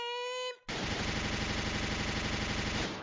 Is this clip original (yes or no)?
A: yes